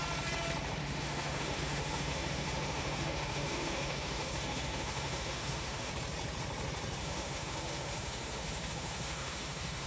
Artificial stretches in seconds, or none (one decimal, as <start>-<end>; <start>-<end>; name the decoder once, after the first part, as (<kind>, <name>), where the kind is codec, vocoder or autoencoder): 0.8-5.9 (autoencoder, DAC-VAE); 7.0-9.9